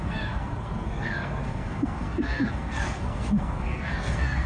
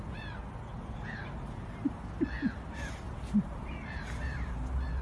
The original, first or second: second